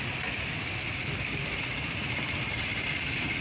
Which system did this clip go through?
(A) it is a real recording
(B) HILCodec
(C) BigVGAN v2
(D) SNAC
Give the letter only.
C